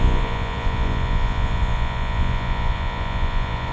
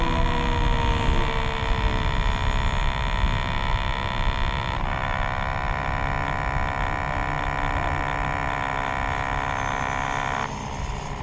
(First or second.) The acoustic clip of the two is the second